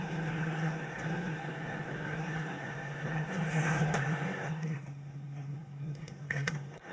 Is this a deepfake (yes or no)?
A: yes